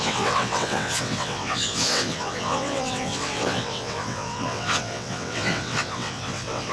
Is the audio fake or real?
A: fake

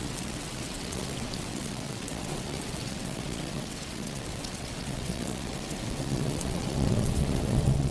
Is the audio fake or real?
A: fake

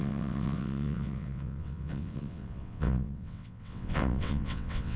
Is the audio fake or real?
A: fake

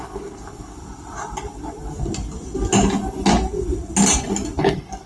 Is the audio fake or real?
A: real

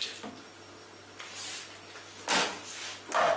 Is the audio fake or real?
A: real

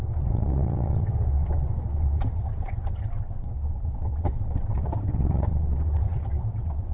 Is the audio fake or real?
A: fake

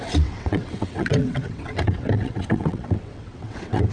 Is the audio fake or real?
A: fake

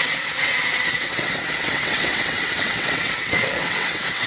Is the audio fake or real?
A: fake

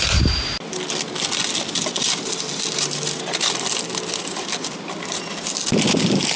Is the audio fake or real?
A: real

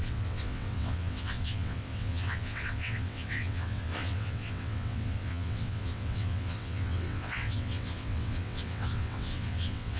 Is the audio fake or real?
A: fake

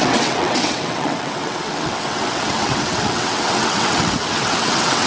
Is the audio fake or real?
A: fake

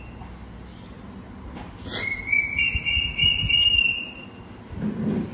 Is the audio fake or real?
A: real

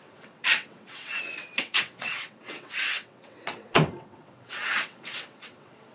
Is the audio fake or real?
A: fake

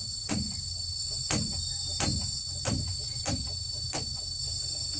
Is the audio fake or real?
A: real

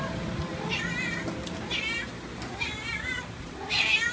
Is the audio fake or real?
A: real